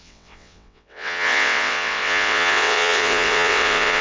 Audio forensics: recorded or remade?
remade